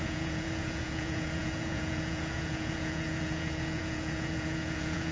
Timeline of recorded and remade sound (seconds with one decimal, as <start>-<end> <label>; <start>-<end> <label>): 0.0-5.1 remade